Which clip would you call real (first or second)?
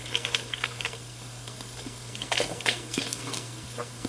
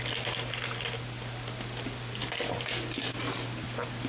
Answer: second